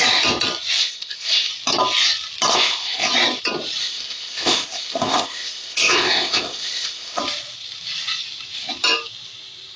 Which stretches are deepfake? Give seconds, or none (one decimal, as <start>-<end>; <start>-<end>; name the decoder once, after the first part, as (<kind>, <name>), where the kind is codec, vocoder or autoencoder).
0.8-1.5 (codec, ZipCodec); 2.5-3.1; 3.8-7.2